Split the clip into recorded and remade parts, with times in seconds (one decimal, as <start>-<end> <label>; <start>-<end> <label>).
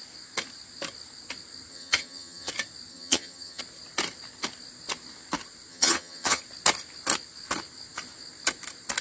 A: 0.0-1.7 recorded; 1.7-2.5 remade; 2.5-2.9 recorded; 2.9-3.6 remade; 3.6-5.7 recorded; 5.7-6.4 remade; 6.4-9.0 recorded